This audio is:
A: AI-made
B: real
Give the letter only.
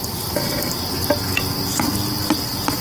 B